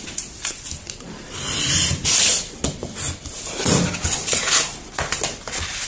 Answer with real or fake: real